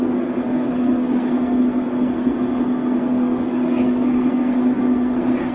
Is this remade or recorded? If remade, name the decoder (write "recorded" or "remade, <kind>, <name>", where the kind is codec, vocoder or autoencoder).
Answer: remade, codec, SNAC